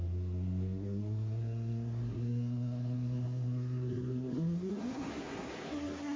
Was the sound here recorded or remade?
remade